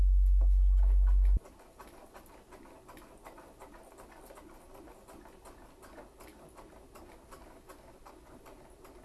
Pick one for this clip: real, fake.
real